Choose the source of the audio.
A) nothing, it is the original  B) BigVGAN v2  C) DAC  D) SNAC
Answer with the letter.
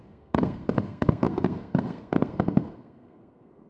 D